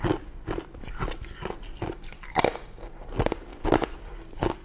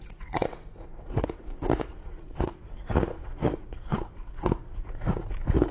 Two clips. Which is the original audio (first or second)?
first